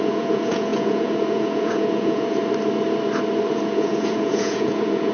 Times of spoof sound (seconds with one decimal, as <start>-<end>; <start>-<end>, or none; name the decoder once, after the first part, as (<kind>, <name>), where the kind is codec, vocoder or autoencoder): 0.0-2.4 (vocoder, Vocos); 3.5-5.1